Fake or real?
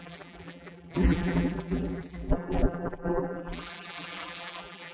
fake